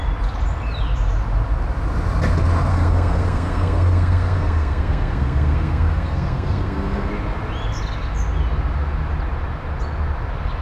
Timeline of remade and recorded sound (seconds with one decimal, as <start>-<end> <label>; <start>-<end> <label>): 0.0-2.7 recorded; 2.7-7.1 remade; 7.1-10.6 recorded